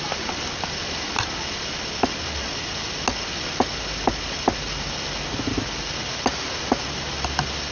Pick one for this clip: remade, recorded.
recorded